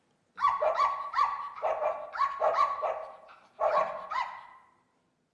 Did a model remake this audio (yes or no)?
yes